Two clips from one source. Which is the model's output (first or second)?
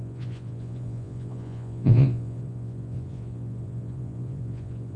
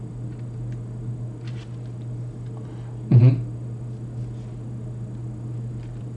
first